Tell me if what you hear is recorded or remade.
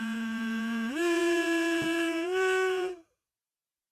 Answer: remade